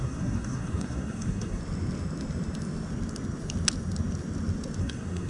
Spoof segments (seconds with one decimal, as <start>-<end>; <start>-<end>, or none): 0.0-1.6; 4.8-5.3